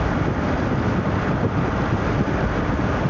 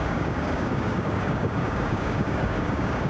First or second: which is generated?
second